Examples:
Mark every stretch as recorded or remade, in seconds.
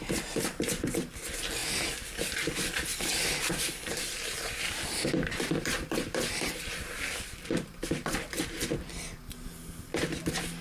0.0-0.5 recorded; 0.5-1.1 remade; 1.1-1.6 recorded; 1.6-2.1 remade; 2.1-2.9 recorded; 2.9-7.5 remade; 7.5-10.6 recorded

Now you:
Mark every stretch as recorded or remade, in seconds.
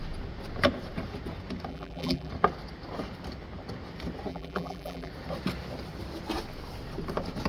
0.0-1.7 recorded; 1.7-2.3 remade; 2.3-4.3 recorded; 4.3-5.1 remade; 5.1-7.5 recorded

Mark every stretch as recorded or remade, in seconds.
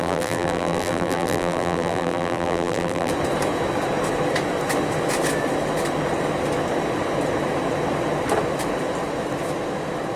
0.0-3.1 remade; 3.1-10.2 recorded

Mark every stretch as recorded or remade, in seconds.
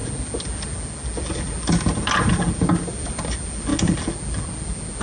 0.0-5.0 recorded